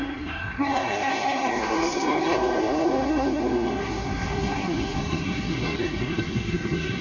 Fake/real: fake